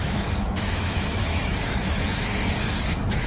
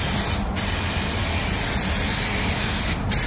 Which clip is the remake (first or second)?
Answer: first